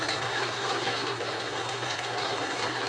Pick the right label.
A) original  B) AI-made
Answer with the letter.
B